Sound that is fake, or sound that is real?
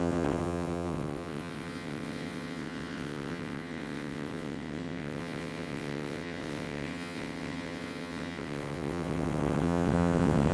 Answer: fake